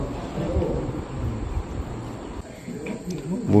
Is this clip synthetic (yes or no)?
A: yes